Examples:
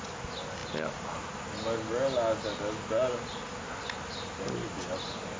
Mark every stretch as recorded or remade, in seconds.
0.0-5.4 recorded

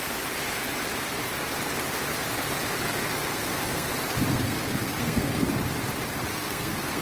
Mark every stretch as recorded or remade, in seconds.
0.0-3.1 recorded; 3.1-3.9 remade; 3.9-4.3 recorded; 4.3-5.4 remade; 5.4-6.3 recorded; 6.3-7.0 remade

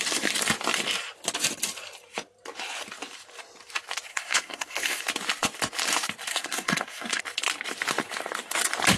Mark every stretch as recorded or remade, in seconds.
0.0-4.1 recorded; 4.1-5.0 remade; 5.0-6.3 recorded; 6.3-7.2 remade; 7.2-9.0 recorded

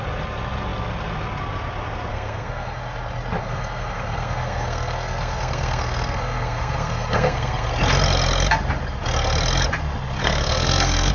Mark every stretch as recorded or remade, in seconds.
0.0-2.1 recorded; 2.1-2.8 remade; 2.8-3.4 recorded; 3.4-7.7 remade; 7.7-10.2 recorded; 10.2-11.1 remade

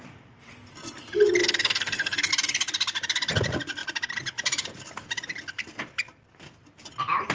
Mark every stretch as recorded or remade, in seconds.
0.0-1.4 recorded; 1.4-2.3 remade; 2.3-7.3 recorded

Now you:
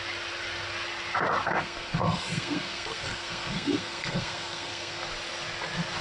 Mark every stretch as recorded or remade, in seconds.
0.0-1.4 recorded; 1.4-5.0 remade; 5.0-6.0 recorded

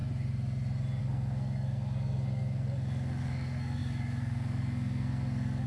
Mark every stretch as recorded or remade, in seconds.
0.0-1.0 recorded; 1.0-5.7 remade